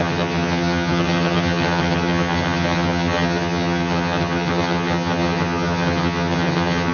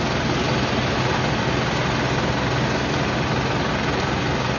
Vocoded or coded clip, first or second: first